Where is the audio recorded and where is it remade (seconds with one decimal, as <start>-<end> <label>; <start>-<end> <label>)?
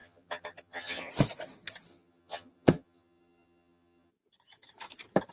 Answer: 0.0-1.1 remade; 1.1-1.9 recorded; 1.9-4.1 remade; 4.1-5.3 recorded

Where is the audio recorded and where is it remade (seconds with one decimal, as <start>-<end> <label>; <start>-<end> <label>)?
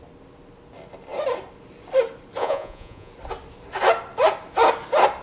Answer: 0.0-2.4 recorded; 2.4-3.1 remade; 3.1-5.2 recorded